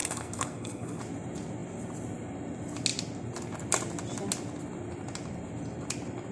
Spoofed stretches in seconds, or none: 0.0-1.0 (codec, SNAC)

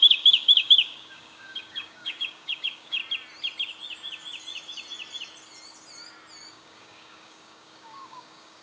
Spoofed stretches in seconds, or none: 0.0-3.0 (codec, DAC); 6.5-8.6